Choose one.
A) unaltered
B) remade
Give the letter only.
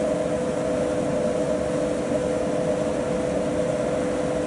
A